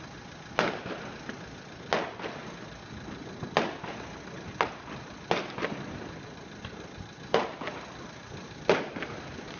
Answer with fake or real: real